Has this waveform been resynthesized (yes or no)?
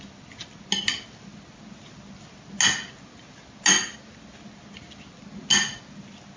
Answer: no